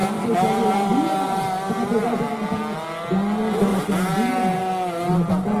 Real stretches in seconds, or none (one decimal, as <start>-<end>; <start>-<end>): 0.0-3.7; 4.6-5.6